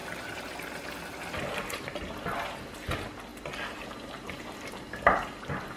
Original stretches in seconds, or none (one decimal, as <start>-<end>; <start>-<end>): 0.0-5.8